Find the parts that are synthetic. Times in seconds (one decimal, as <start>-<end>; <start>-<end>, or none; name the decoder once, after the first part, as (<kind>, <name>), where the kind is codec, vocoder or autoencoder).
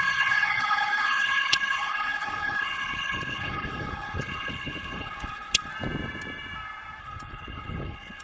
0.0-5.7 (codec, HILCodec); 7.0-8.2